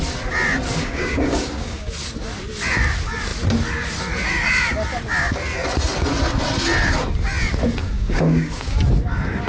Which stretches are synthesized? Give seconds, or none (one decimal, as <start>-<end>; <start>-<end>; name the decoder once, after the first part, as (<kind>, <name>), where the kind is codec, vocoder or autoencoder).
0.7-1.9 (codec, DAC); 7.8-8.8